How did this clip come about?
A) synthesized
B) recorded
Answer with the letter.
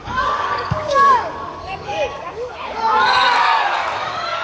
A